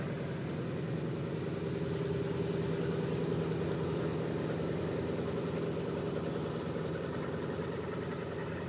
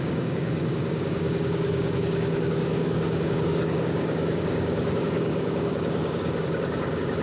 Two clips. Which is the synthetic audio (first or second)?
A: second